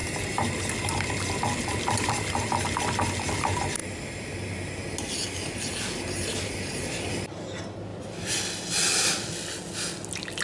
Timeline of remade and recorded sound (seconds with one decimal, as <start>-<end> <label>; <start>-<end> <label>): 0.0-0.6 remade; 0.6-7.9 recorded; 7.9-8.4 remade; 8.4-10.4 recorded